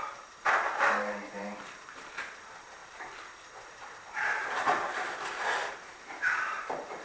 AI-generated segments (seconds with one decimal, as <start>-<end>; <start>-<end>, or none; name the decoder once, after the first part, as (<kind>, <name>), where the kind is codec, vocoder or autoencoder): 0.0-7.0 (vocoder, BigVGAN v2)